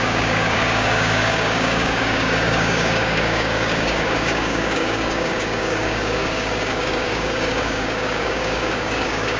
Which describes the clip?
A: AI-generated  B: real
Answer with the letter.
A